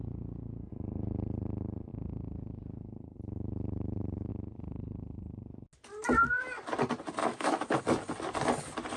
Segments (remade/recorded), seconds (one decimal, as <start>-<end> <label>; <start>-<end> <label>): 0.0-7.2 recorded; 7.2-7.8 remade; 7.8-9.0 recorded